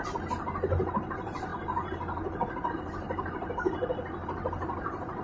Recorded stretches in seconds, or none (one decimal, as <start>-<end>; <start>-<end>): 0.0-5.2

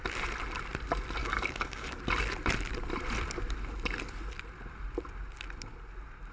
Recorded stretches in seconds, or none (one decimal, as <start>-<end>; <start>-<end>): 0.0-1.2; 2.0-6.3

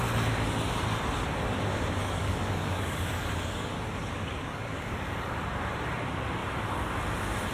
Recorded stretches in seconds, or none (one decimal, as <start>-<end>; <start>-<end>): 0.0-2.0; 3.7-4.3; 5.4-7.5

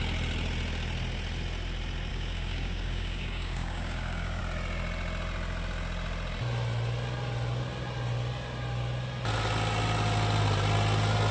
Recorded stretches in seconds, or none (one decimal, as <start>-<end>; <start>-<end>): 0.0-2.1; 4.4-11.3